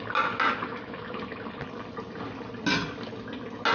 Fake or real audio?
real